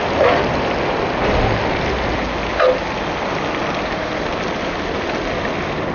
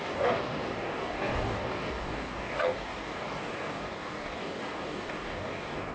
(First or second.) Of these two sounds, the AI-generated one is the second